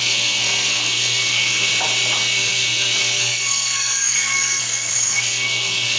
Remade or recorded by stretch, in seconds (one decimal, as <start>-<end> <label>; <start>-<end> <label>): 0.0-1.7 remade; 1.7-2.2 recorded; 2.2-6.0 remade